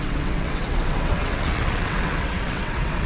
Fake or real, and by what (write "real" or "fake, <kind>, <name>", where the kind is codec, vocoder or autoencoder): fake, vocoder, WaveNeXt